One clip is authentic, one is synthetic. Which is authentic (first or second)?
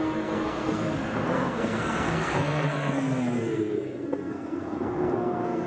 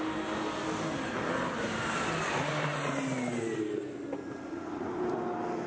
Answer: second